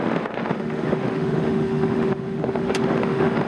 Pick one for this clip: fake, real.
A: fake